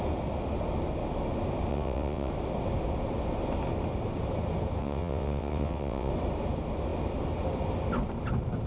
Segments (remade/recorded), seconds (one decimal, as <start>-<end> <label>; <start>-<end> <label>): 0.0-1.7 recorded; 1.7-2.3 remade; 2.3-4.8 recorded; 4.8-6.1 remade; 6.1-8.7 recorded